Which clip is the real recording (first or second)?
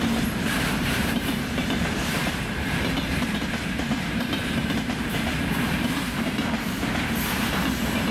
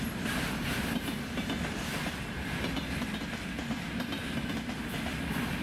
second